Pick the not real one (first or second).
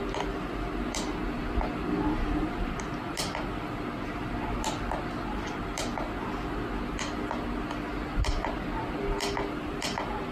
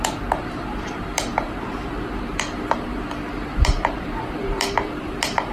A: second